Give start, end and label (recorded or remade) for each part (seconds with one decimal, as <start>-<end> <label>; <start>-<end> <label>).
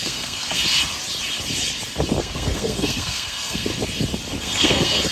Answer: 0.0-0.6 remade; 0.6-2.2 recorded; 2.2-3.7 remade; 3.7-4.4 recorded; 4.4-5.1 remade